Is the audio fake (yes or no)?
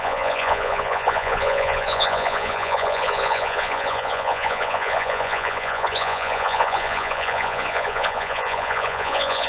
yes